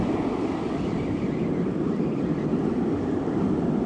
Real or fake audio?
real